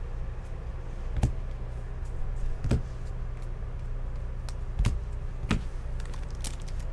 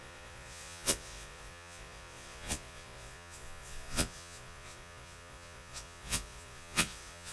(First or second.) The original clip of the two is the first